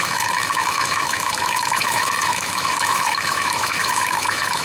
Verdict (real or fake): fake